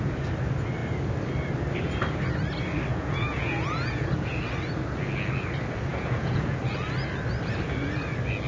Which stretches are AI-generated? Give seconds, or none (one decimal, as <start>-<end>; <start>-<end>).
2.9-4.4; 5.9-6.6